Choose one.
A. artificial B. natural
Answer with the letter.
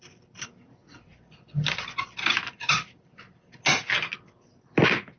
B